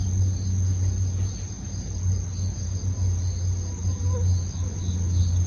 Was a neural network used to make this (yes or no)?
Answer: no